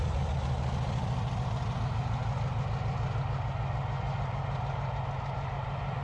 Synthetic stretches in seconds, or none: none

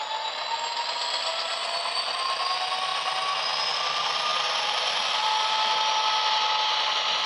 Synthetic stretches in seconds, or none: none

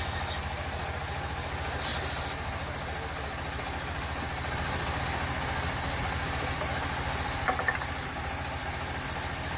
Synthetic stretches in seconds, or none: 0.4-1.0 (vocoder, BigVGAN v2)

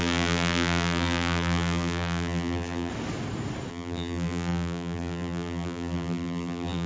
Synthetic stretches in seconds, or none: 0.0-2.9 (vocoder, BigVGAN v2); 3.7-6.9

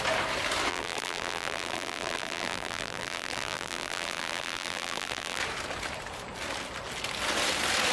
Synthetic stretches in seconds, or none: 0.7-5.4 (vocoder, BigVGAN v2)